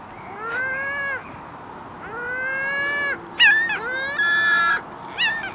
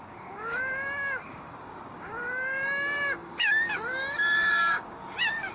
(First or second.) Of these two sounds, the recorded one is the first